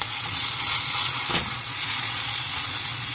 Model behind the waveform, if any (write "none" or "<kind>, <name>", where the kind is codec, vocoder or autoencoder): vocoder, Vocos